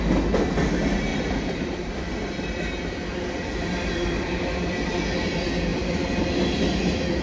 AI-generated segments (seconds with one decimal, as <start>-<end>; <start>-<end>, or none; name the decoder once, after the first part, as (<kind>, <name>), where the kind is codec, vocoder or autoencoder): 1.1-2.4 (vocoder, BigVGAN v2); 3.1-4.4